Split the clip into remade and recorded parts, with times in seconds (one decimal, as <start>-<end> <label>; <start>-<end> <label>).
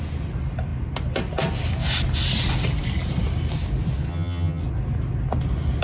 0.0-4.1 recorded; 4.1-4.6 remade; 4.6-5.8 recorded